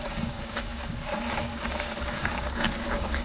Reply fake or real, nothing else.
fake